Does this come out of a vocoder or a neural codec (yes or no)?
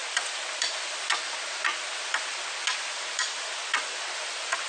no